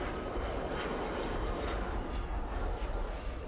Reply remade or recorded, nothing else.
recorded